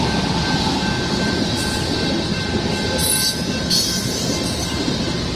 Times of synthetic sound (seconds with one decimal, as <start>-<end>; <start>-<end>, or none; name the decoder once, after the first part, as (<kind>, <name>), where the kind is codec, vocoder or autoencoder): none